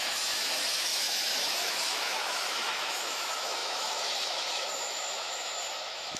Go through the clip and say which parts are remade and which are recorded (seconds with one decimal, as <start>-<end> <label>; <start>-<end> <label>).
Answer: 0.0-6.2 remade